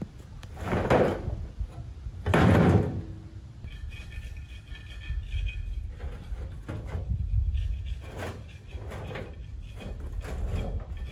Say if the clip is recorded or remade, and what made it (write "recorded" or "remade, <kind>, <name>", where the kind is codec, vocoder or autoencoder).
recorded